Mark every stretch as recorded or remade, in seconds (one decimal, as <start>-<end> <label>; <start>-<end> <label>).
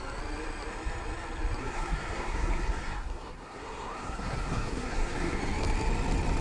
0.0-1.6 recorded; 1.6-5.4 remade; 5.4-6.4 recorded